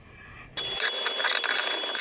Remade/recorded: recorded